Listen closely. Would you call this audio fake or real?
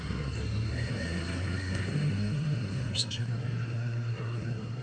fake